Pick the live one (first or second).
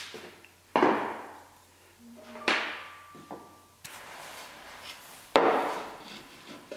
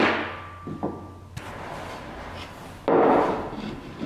second